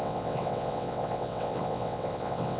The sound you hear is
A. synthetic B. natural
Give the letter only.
A